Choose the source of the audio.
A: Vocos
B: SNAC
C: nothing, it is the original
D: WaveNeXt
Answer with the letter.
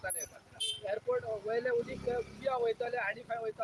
C